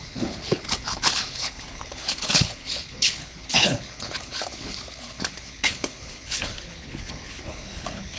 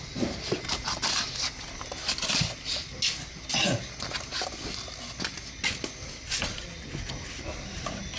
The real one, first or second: second